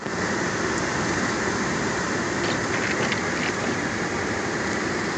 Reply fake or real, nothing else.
real